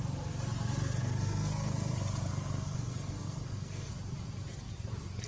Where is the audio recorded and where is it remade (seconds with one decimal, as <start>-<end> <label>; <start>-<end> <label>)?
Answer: 0.0-1.0 recorded; 1.0-1.9 remade; 1.9-2.3 recorded; 2.3-3.9 remade; 3.9-5.3 recorded